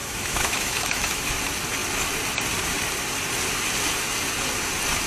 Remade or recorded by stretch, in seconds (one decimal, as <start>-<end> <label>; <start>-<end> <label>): 0.0-1.3 remade; 1.3-5.1 recorded